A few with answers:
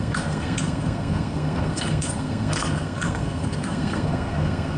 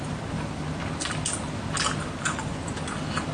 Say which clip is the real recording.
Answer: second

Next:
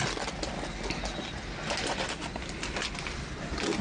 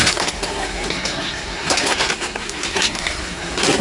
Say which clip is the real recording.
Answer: first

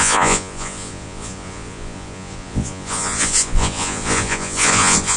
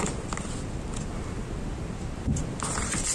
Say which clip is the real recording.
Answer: second